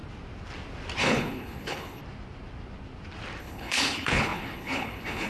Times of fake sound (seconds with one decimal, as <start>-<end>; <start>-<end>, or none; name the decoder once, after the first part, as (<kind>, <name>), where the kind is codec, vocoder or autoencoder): 1.0-2.0 (codec, HILCodec); 3.4-5.3